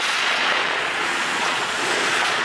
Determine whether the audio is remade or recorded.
remade